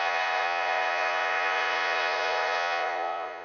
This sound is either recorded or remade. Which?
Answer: remade